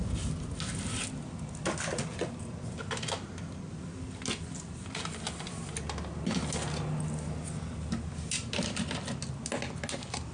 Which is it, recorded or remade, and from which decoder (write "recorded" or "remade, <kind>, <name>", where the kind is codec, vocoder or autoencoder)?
recorded